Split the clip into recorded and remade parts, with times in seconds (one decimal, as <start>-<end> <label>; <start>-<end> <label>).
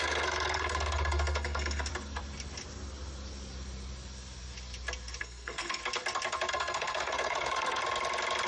0.0-1.9 remade; 1.9-5.2 recorded; 5.2-5.8 remade; 5.8-6.5 recorded; 6.5-7.8 remade; 7.8-8.5 recorded